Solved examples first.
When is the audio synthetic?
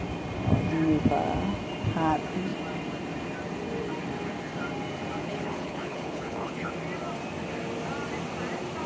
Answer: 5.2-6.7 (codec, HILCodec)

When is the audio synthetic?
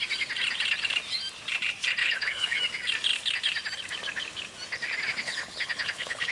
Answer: 2.0-2.6 (codec, HILCodec); 5.2-6.3